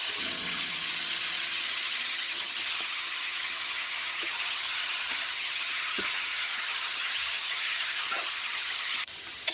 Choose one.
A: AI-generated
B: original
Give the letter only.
A